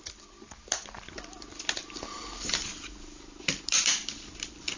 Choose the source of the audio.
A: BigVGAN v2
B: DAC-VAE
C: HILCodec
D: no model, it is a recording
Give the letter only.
A